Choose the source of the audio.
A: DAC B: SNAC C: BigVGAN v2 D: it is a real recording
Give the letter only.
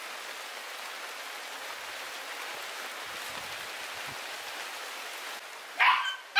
D